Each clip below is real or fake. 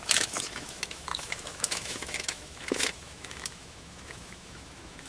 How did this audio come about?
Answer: fake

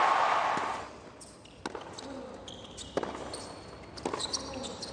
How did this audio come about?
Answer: real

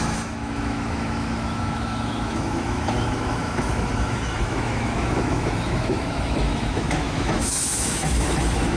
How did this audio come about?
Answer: fake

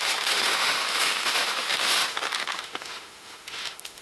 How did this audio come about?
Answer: fake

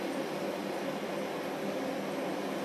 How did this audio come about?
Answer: real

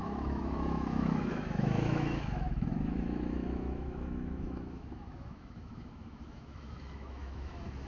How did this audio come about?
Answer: fake